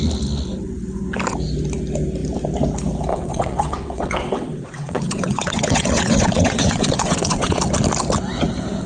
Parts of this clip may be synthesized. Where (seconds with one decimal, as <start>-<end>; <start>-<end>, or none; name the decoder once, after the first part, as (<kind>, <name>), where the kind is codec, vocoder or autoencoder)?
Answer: 3.1-7.6 (vocoder, WaveNeXt)